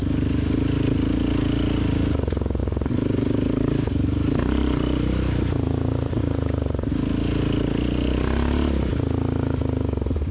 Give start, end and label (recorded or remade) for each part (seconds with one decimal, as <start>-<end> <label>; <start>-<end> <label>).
0.0-2.6 recorded; 2.6-6.9 remade; 6.9-10.3 recorded